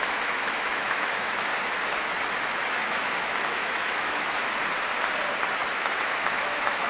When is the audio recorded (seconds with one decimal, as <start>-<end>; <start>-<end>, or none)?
1.5-2.7; 4.4-5.6